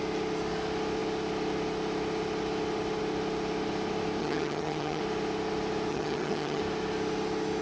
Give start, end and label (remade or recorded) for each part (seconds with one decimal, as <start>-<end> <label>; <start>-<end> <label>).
0.0-4.2 recorded; 4.2-5.0 remade; 5.0-5.9 recorded; 5.9-6.6 remade; 6.6-7.6 recorded